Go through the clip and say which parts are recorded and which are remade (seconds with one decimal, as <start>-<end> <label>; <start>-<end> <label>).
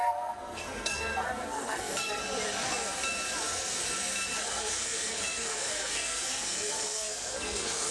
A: 0.0-2.2 remade; 2.2-4.4 recorded; 4.4-7.9 remade